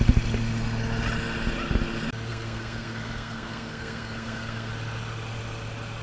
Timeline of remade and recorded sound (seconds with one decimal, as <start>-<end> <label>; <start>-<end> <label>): 0.0-2.3 recorded; 2.3-4.7 remade; 4.7-6.0 recorded